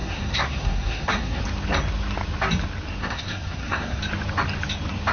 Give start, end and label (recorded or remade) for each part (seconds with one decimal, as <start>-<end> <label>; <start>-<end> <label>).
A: 0.0-1.4 remade; 1.4-3.0 recorded; 3.0-4.0 remade; 4.0-5.1 recorded